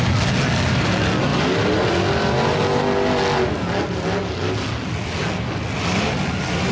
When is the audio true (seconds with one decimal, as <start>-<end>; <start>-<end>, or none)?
0.0-6.7